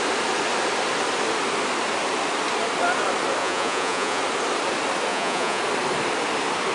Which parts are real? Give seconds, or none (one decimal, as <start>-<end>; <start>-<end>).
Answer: 0.0-3.4; 4.2-5.1; 5.6-6.7